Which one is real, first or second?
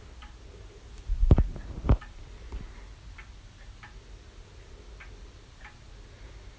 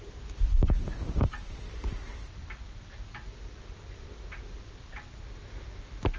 first